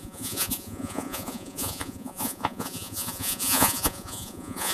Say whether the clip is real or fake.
fake